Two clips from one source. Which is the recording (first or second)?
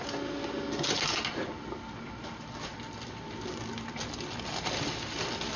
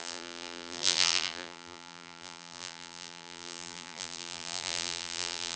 first